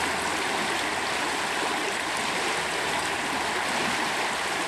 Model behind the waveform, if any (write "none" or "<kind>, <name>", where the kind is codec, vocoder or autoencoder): none